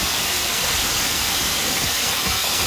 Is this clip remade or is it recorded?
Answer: remade